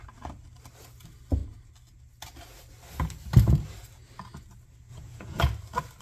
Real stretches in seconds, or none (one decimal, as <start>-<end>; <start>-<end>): 0.0-4.9; 5.4-6.0